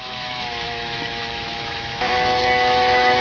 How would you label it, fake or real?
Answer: fake